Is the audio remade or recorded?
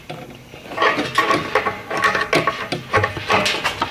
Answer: recorded